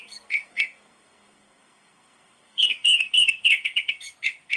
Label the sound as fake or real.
fake